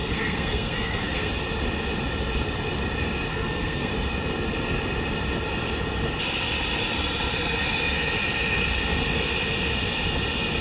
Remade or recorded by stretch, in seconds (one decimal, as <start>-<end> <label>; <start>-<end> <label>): 0.0-1.3 remade; 1.3-3.3 recorded; 3.3-3.9 remade; 3.9-10.6 recorded